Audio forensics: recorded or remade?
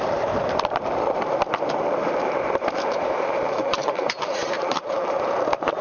remade